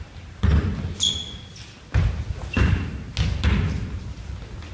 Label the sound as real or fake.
real